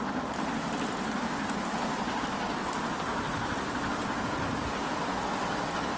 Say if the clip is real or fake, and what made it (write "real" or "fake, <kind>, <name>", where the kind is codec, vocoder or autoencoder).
real